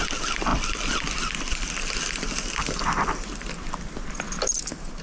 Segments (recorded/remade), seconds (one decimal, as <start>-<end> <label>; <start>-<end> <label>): 0.0-5.0 recorded